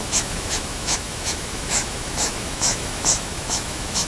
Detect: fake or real fake